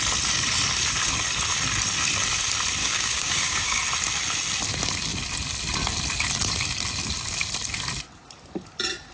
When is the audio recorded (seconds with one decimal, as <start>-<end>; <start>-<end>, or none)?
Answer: 0.0-2.8; 3.8-9.1